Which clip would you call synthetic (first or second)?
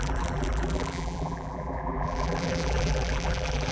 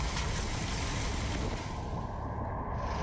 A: first